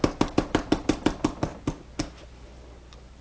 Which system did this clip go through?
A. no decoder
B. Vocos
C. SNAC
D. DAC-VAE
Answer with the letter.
A